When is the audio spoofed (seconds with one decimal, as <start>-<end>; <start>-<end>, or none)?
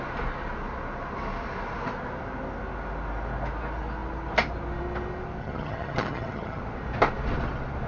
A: 5.4-6.6